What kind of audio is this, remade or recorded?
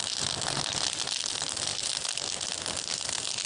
recorded